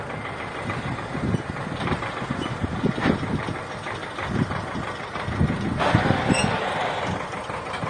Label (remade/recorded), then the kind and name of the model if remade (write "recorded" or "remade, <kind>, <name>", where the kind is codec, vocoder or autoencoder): recorded